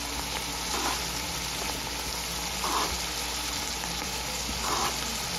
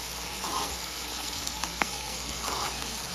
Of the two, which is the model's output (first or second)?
second